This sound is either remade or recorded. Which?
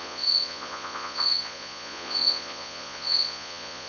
remade